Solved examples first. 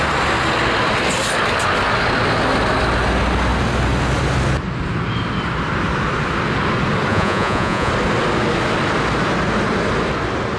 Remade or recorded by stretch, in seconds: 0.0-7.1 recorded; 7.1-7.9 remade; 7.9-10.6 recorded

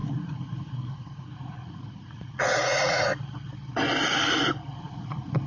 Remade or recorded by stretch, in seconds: 0.0-3.1 remade; 3.1-4.8 recorded; 4.8-5.5 remade

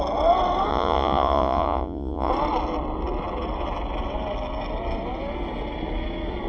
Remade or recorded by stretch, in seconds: 0.0-0.7 recorded; 0.7-2.3 remade; 2.3-6.5 recorded

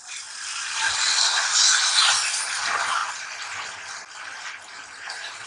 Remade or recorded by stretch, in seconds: 0.0-5.5 recorded